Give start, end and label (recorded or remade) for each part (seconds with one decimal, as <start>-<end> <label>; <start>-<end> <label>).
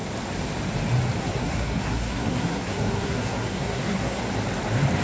0.0-1.2 recorded; 1.2-4.2 remade; 4.2-5.0 recorded